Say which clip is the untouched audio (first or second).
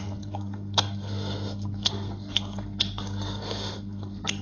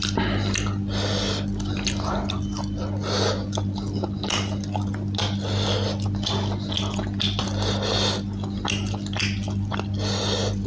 second